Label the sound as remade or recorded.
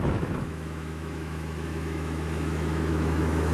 remade